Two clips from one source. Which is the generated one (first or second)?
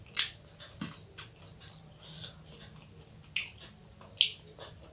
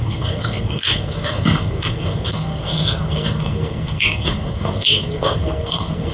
second